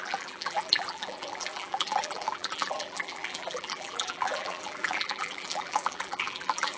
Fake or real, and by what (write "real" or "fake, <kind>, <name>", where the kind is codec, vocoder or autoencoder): fake, vocoder, BigVGAN v2